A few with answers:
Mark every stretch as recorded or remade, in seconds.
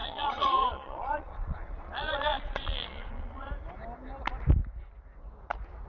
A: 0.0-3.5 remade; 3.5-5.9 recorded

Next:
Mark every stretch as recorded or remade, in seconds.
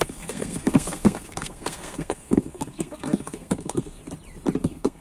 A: 0.0-4.0 remade; 4.0-4.6 recorded; 4.6-5.0 remade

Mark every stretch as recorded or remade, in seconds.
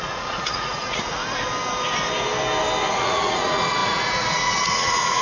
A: 0.0-1.2 remade; 1.2-2.9 recorded; 2.9-5.2 remade